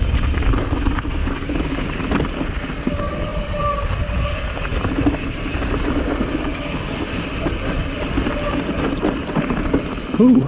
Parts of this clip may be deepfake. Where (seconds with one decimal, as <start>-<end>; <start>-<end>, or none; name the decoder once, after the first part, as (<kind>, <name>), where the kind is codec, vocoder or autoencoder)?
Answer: 1.2-1.9 (codec, DAC)